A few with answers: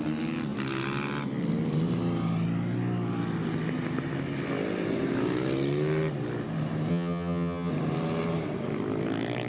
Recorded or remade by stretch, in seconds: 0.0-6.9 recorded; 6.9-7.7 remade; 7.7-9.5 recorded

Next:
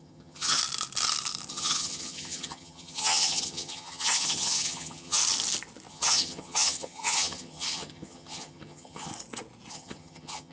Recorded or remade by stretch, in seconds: 0.0-0.6 remade; 0.6-1.5 recorded; 1.5-5.2 remade; 5.2-5.9 recorded; 5.9-9.1 remade; 9.1-9.7 recorded; 9.7-10.5 remade

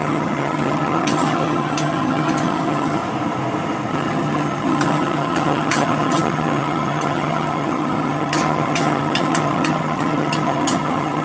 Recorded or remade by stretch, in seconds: 0.0-3.0 remade; 3.0-3.9 recorded; 3.9-11.2 remade

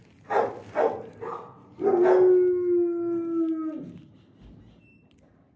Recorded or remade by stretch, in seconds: 0.0-5.6 recorded